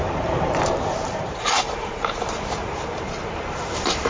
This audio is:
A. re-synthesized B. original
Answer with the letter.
A